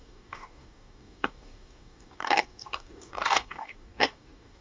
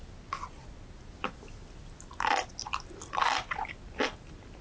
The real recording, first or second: second